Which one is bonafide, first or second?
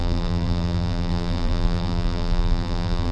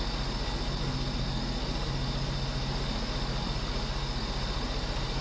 second